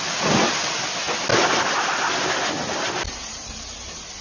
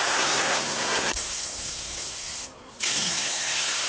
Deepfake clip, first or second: second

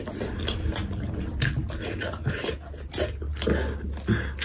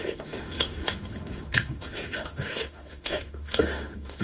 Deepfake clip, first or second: second